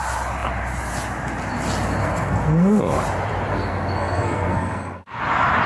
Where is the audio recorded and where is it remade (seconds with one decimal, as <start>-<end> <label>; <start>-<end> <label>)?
0.0-2.0 recorded; 2.0-2.8 remade; 2.8-3.5 recorded; 3.5-5.2 remade; 5.2-5.7 recorded